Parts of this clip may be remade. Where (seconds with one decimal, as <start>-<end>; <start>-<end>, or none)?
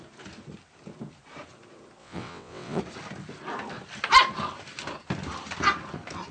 2.0-2.8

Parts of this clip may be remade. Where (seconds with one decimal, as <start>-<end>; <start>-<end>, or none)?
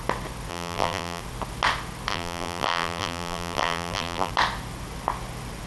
0.5-1.2; 2.1-4.3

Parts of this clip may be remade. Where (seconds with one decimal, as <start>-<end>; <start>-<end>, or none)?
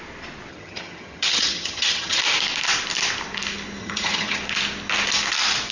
0.5-2.2; 3.8-4.4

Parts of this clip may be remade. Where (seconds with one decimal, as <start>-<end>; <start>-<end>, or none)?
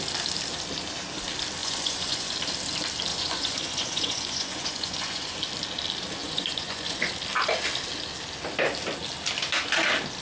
1.6-2.3; 3.1-5.4; 6.2-7.1